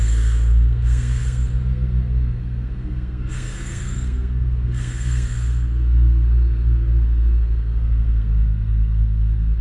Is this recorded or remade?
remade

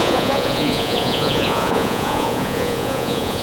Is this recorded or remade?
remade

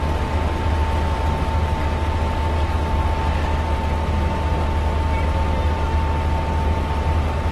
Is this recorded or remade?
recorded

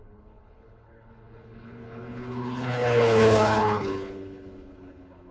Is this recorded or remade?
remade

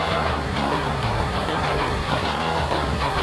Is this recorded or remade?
remade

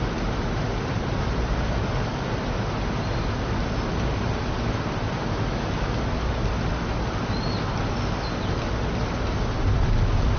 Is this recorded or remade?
recorded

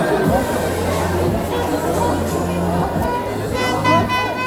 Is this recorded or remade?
recorded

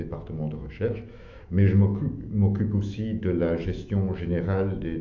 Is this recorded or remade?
remade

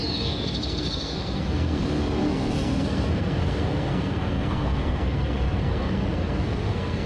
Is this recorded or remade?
remade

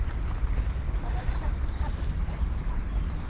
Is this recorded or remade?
recorded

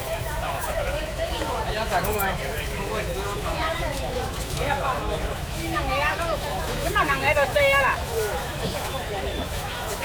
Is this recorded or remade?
remade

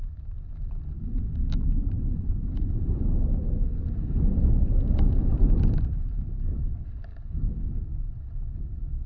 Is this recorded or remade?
recorded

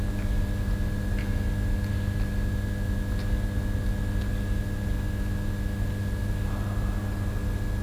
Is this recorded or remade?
recorded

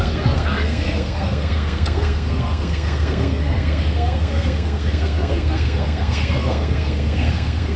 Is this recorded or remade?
remade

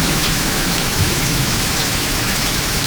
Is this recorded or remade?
remade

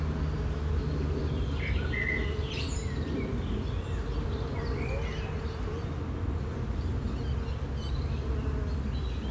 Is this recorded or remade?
recorded